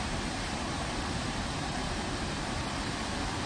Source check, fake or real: fake